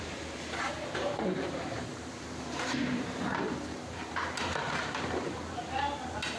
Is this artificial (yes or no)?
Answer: yes